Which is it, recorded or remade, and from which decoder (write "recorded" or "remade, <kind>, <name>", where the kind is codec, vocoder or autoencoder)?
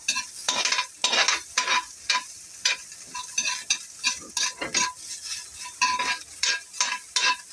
recorded